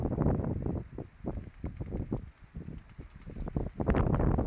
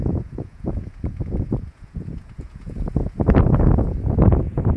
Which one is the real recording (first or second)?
first